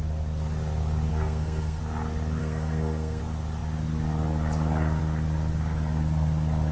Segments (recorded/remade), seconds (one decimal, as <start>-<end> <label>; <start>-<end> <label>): 0.0-1.1 recorded; 1.1-1.8 remade; 1.8-2.4 recorded; 2.4-3.2 remade; 3.2-6.7 recorded